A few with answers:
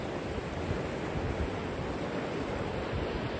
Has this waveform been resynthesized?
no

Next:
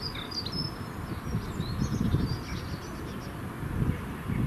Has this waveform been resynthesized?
no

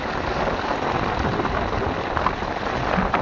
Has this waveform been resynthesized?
no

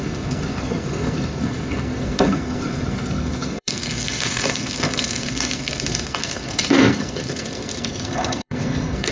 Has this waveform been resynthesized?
yes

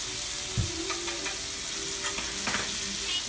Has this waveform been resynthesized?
no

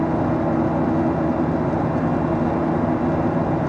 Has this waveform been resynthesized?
no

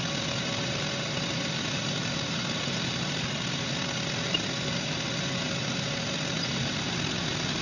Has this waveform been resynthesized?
no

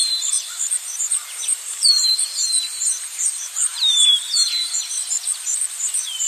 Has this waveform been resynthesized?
yes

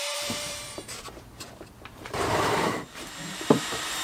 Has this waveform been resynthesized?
yes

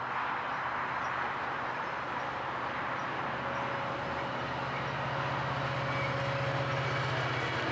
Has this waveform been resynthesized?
no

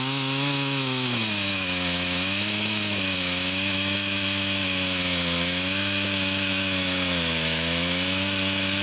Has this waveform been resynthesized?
yes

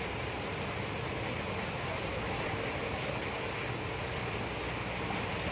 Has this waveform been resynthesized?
no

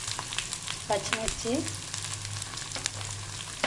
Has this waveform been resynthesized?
no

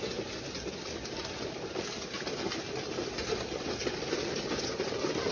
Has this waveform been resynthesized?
no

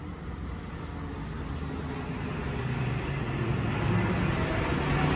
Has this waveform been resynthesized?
no